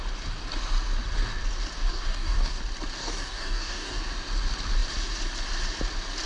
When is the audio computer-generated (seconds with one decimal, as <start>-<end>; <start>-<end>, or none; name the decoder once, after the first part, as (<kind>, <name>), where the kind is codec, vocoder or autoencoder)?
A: 1.9-2.6 (codec, DAC); 3.0-4.0